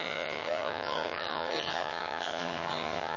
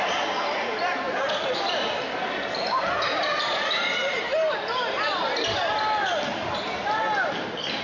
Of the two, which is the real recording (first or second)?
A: second